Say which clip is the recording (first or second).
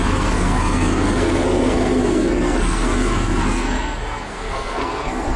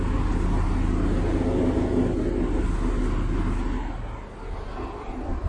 second